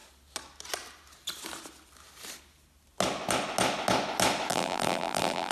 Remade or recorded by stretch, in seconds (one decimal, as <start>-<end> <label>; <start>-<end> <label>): 0.0-4.5 recorded; 4.5-5.5 remade